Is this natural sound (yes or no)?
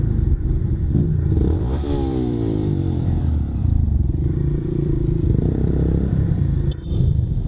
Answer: no